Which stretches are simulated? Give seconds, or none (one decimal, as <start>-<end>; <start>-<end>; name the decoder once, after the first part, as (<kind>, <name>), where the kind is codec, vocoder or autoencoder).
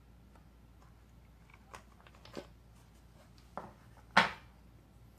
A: none